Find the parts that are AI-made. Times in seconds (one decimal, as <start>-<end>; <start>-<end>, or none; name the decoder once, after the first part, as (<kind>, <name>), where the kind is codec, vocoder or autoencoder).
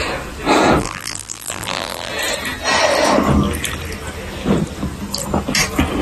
0.8-2.1 (vocoder, BigVGAN v2)